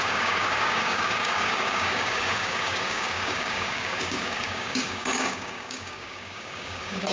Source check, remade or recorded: remade